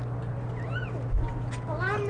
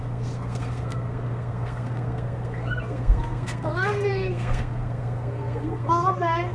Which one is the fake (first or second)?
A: second